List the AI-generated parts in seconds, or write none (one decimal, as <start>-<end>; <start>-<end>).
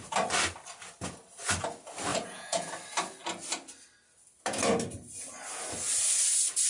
2.1-2.7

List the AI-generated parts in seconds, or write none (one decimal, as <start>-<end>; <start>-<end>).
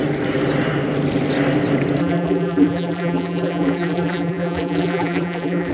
2.0-5.7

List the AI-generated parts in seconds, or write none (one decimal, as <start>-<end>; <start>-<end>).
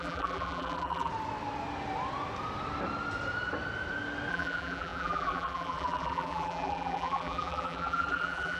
0.0-1.1; 4.3-8.6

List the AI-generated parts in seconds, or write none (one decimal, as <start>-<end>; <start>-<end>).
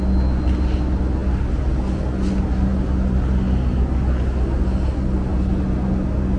none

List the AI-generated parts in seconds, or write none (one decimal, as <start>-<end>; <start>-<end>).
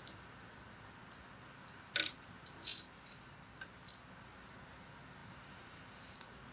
none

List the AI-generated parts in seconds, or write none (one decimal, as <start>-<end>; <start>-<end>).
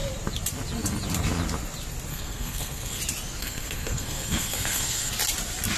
2.1-3.0; 3.4-5.1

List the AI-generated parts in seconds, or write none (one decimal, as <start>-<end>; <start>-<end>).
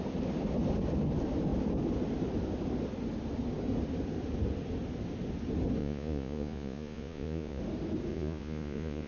5.8-7.6; 8.1-9.1